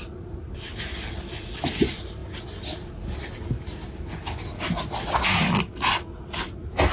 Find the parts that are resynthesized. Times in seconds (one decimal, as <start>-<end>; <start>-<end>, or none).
none